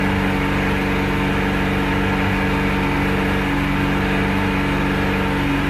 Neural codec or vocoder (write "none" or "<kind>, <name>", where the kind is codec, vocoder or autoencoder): none